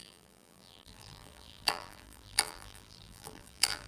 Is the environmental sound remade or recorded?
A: remade